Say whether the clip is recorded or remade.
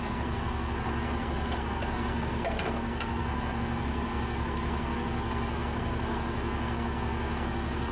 remade